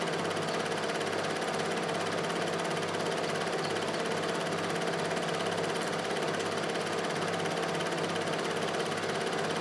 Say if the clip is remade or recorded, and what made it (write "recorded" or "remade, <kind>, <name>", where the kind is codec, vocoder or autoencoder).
recorded